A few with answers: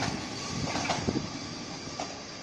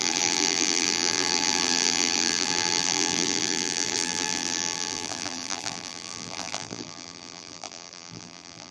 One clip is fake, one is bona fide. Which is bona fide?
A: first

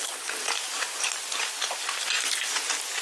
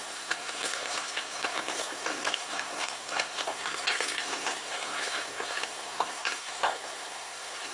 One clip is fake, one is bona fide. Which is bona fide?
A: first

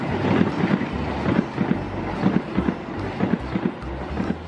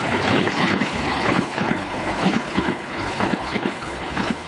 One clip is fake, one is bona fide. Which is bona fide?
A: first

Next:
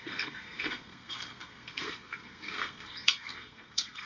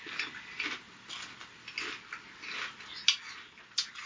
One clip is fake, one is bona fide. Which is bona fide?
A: second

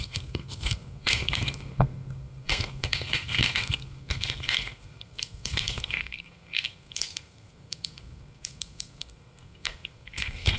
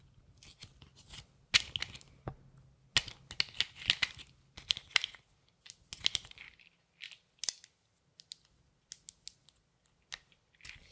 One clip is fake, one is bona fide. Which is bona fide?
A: second